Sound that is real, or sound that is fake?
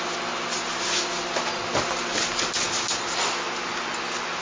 real